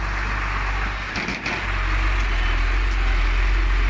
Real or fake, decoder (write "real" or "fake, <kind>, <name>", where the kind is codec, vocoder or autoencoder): real